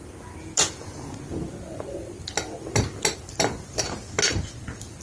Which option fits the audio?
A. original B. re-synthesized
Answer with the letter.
A